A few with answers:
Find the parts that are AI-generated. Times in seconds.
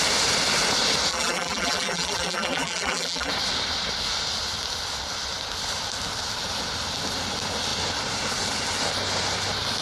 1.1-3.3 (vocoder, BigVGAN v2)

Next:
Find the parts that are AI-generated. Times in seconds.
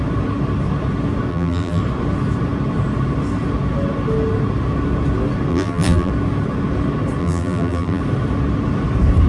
1.3-1.8 (vocoder, BigVGAN v2); 5.5-6.1; 7.2-8.0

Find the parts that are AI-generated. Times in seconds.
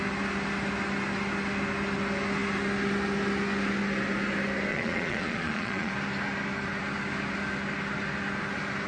4.7-5.9 (vocoder, Vocos)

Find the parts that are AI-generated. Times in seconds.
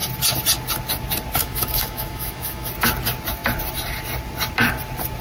1.4-2.7 (autoencoder, DAC-VAE)